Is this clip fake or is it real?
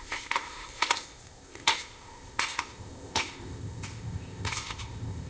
fake